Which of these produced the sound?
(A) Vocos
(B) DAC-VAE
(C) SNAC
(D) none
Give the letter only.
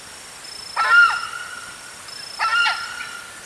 D